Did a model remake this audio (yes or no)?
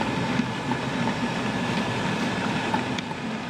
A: yes